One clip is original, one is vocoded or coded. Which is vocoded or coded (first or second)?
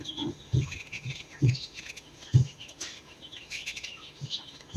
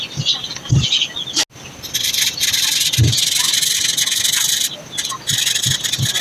first